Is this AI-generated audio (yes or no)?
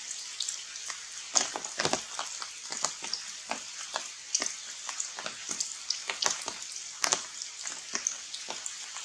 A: no